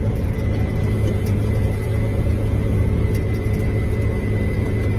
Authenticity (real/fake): fake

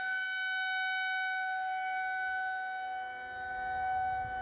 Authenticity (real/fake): real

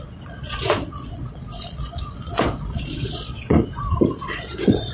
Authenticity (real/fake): fake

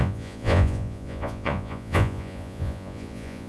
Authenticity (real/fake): fake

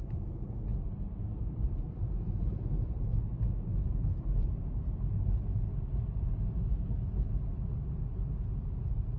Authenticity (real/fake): real